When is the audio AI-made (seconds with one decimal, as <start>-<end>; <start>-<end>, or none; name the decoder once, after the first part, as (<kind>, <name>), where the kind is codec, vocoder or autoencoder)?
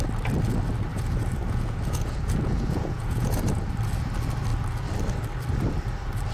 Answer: 0.9-3.6 (vocoder, Vocos)